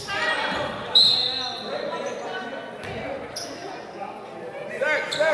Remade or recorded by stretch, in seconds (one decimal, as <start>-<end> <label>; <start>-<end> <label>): 0.0-5.3 recorded